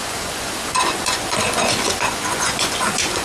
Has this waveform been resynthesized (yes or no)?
yes